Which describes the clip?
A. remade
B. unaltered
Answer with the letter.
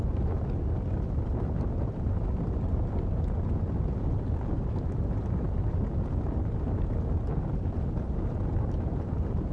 B